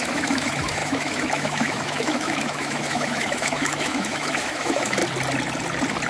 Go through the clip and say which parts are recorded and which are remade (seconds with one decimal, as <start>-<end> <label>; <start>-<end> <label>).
0.0-5.0 remade; 5.0-6.1 recorded